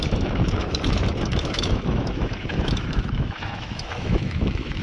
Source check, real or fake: fake